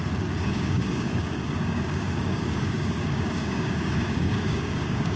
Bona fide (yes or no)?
no